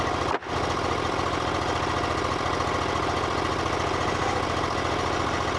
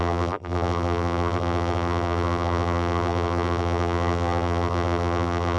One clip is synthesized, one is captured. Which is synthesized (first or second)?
second